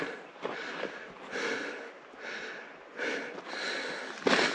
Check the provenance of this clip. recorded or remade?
recorded